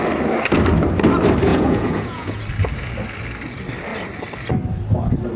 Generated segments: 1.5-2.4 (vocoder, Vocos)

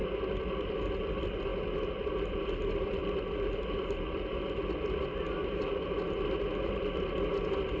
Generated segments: none

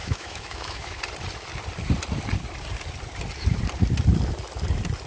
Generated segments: 0.0-1.0 (autoencoder, DAC-VAE)

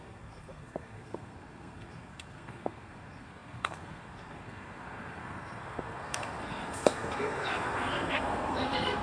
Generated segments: 0.0-9.0 (codec, SNAC)

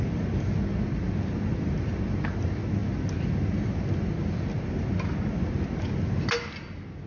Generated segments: none